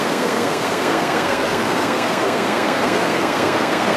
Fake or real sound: fake